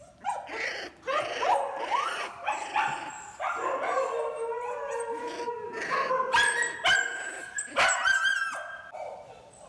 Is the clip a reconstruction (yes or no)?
no